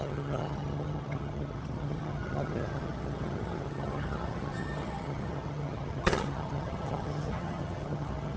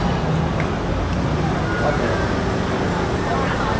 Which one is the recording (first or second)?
second